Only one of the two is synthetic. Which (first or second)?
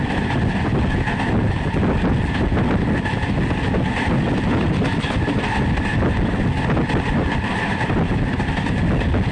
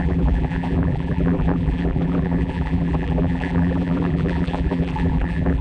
second